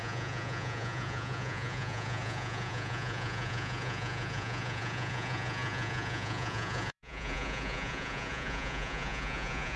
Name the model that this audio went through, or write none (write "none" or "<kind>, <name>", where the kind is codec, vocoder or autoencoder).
vocoder, Vocos